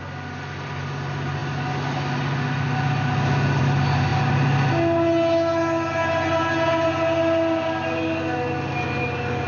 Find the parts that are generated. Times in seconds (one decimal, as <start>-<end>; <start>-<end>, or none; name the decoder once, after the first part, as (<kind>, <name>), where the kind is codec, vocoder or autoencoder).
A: none